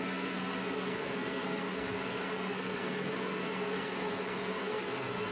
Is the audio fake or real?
fake